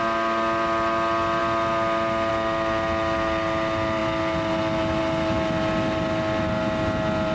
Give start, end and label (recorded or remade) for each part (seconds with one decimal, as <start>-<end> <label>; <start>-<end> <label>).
0.0-7.3 recorded